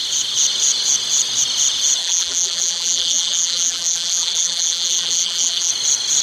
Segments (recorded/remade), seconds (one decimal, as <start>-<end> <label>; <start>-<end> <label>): 0.0-2.0 recorded; 2.0-5.7 remade; 5.7-6.2 recorded